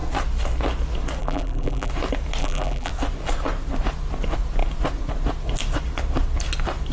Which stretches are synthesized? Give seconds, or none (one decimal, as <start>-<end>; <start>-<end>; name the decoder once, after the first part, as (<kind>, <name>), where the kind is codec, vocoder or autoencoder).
1.2-1.9 (vocoder, BigVGAN v2); 2.4-2.9

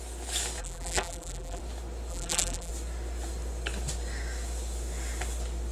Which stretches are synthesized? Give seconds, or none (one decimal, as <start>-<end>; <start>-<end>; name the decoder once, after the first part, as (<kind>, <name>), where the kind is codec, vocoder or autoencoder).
0.6-1.6 (vocoder, BigVGAN v2); 2.1-2.7

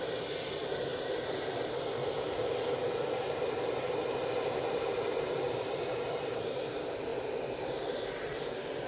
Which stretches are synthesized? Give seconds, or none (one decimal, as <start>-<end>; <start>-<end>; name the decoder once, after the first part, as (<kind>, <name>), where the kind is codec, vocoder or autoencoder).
0.0-7.1 (vocoder, BigVGAN v2)

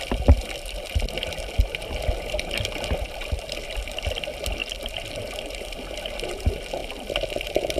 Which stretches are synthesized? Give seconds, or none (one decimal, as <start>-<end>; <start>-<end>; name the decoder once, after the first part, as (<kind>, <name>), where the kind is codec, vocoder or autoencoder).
4.6-5.5 (vocoder, BigVGAN v2)

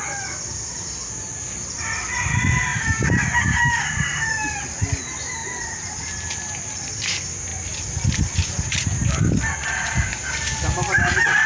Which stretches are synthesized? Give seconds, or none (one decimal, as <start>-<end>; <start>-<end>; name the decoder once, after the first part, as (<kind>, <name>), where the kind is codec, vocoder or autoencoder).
2.7-4.3 (vocoder, BigVGAN v2); 5.4-6.4

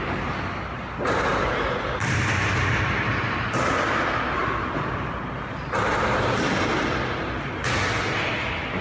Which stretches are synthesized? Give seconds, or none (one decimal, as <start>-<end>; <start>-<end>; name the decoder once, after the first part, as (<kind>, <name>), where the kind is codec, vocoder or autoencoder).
4.4-6.2 (vocoder, BigVGAN v2)

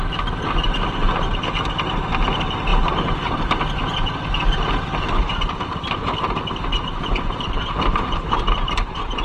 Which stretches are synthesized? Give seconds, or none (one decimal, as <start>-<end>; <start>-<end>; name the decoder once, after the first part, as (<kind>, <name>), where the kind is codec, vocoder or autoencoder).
6.7-8.4 (vocoder, BigVGAN v2)

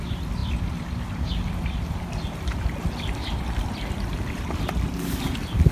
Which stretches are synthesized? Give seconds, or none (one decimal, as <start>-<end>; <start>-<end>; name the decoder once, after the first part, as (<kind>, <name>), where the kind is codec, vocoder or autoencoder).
0.4-3.8 (vocoder, BigVGAN v2)